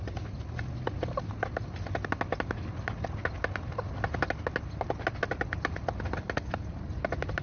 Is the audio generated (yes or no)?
no